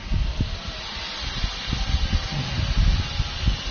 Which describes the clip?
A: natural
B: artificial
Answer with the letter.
A